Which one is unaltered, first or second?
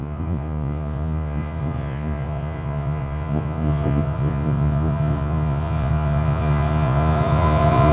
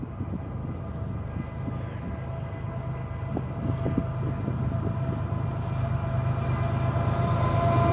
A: second